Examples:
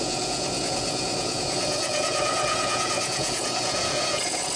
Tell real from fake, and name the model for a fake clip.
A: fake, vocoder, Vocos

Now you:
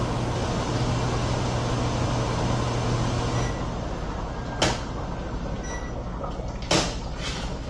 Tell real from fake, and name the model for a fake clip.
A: real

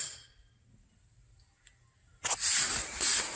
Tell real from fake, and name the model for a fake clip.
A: real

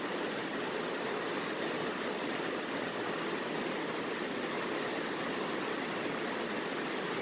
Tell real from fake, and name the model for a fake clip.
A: real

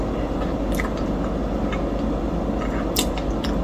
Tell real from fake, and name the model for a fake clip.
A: real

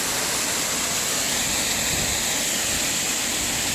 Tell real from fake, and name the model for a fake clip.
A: real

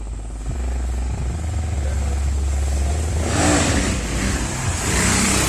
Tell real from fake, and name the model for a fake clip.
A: real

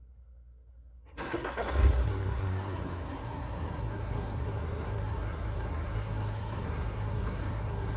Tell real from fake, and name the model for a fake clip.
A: fake, codec, SNAC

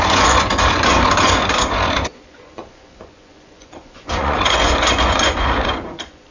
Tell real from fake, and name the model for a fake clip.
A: fake, vocoder, Vocos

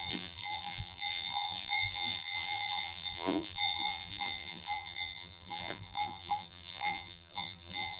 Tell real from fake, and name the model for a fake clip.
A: fake, vocoder, BigVGAN v2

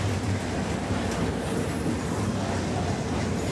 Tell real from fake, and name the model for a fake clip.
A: real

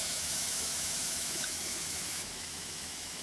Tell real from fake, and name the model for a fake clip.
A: fake, autoencoder, DAC-VAE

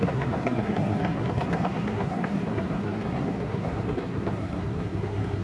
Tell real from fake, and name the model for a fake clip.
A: fake, codec, SNAC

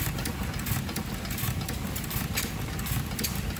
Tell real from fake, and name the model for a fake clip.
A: real